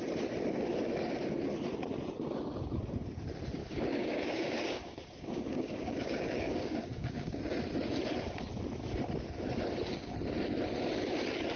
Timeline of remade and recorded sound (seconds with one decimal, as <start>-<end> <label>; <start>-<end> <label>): 0.0-3.6 recorded; 3.6-7.4 remade; 7.4-11.6 recorded